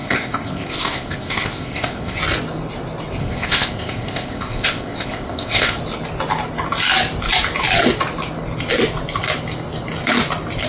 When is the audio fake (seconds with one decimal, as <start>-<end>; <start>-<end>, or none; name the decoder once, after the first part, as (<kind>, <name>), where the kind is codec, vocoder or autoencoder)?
0.0-2.2 (codec, ZipCodec); 3.2-5.8